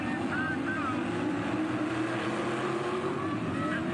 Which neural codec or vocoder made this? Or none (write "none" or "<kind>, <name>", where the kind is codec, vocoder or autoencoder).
none